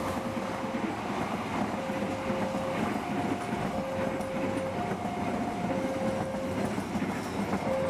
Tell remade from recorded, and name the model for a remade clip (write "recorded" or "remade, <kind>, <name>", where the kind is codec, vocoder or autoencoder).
recorded